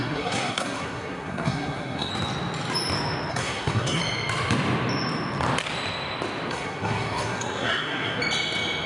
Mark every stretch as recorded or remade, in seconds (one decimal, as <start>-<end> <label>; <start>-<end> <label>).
0.0-2.1 remade; 2.1-3.3 recorded; 3.3-4.0 remade; 4.0-6.5 recorded; 6.5-8.2 remade; 8.2-8.9 recorded

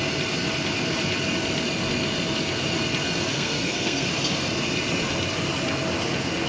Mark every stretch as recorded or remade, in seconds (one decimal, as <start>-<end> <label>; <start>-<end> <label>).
0.0-3.3 recorded; 3.3-4.1 remade; 4.1-6.5 recorded

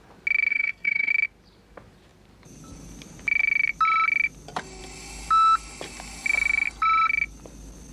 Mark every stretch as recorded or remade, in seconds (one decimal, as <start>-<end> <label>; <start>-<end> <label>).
0.0-0.5 recorded; 0.5-1.1 remade; 1.1-7.9 recorded

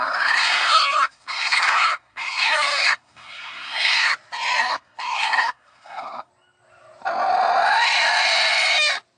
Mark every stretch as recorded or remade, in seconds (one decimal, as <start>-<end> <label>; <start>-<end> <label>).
0.0-4.1 remade; 4.1-4.6 recorded; 4.6-6.3 remade; 6.3-9.2 recorded

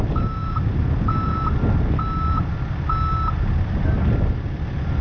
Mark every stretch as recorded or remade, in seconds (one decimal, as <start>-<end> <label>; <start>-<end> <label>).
0.0-5.0 recorded

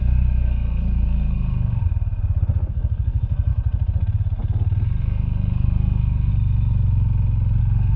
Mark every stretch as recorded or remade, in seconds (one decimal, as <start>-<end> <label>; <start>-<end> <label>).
0.0-1.8 remade; 1.8-2.4 recorded; 2.4-3.5 remade; 3.5-5.0 recorded; 5.0-6.3 remade; 6.3-7.6 recorded; 7.6-8.0 remade